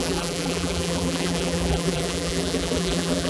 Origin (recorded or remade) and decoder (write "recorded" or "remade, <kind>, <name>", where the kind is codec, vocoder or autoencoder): remade, vocoder, BigVGAN v2